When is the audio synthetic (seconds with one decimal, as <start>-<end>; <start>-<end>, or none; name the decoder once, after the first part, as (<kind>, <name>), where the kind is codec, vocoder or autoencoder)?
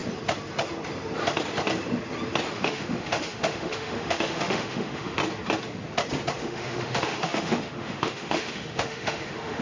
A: 2.5-5.2 (autoencoder, DAC-VAE); 6.4-9.6